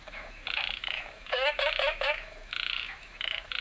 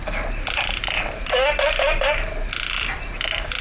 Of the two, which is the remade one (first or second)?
first